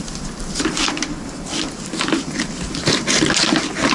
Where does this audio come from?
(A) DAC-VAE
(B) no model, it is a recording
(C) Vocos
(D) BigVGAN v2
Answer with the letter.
B